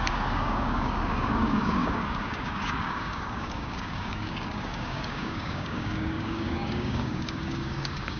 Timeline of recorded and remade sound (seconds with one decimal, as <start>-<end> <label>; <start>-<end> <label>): 0.0-8.2 remade